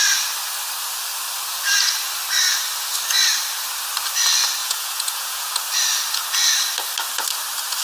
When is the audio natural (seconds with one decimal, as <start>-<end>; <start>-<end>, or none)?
0.0-4.6; 5.6-7.8